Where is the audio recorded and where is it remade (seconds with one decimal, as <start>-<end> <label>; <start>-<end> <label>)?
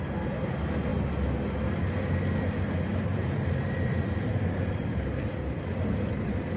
0.0-3.1 recorded; 3.1-5.3 remade; 5.3-6.6 recorded